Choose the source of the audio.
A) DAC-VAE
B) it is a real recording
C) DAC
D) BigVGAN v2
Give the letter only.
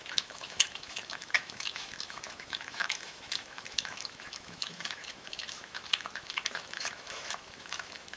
A